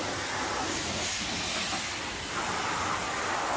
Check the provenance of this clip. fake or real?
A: real